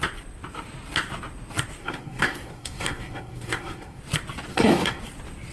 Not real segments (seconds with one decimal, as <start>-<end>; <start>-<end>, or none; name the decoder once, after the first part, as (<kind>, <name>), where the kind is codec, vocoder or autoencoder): 1.8-4.0 (codec, SNAC); 4.5-5.0